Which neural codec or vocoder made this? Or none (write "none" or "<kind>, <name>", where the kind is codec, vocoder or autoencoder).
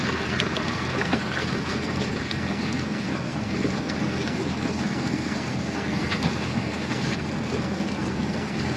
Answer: codec, SNAC